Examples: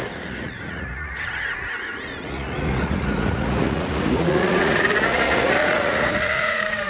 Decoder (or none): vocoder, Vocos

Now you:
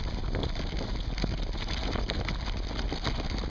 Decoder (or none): none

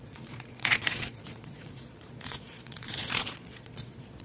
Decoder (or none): vocoder, Vocos